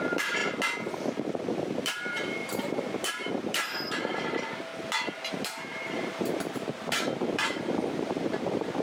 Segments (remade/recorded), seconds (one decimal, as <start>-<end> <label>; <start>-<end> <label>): 0.0-0.4 remade; 0.4-1.8 recorded; 1.8-4.7 remade; 4.7-5.3 recorded; 5.3-8.8 remade